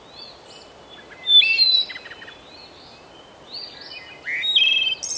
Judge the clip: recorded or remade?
recorded